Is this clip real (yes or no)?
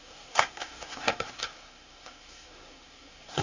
no